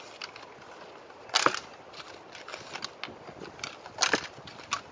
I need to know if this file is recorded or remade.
recorded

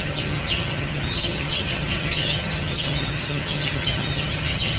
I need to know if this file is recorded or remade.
remade